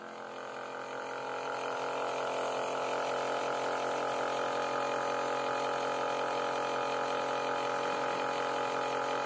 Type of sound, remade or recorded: recorded